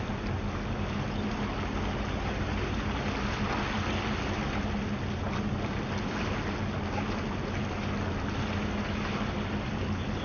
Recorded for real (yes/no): yes